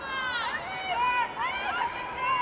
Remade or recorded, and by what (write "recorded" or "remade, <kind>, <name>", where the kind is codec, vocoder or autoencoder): remade, vocoder, BigVGAN v2